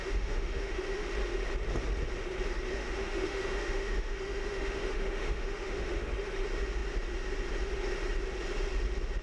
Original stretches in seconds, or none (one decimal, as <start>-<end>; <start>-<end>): 1.1-2.7; 6.1-9.2